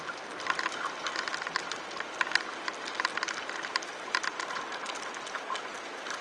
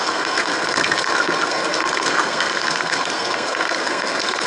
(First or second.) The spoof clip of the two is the second